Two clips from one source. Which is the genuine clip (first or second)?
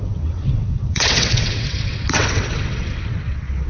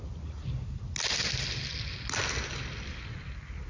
second